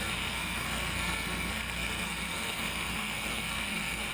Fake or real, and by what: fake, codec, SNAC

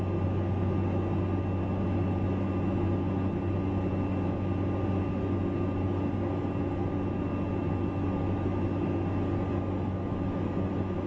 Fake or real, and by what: real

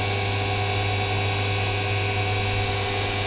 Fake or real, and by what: real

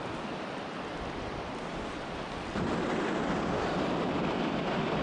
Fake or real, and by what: real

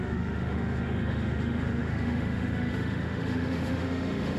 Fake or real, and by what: fake, autoencoder, DAC-VAE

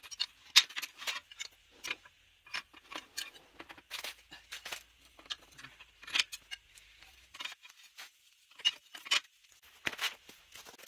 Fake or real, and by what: real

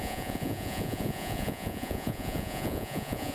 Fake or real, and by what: fake, vocoder, Vocos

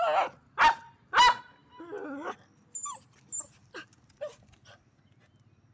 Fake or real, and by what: real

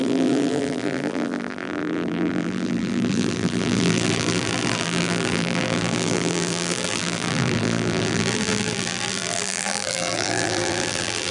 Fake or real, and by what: fake, vocoder, BigVGAN v2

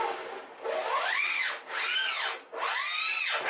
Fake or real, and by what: real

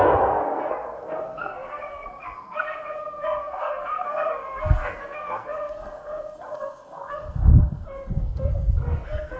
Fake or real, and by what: fake, codec, SNAC